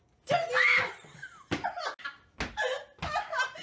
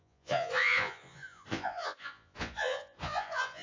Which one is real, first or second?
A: first